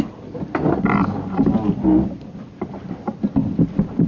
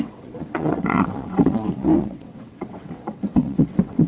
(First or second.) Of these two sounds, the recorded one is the first